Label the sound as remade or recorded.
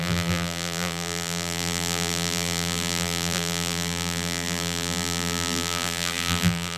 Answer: remade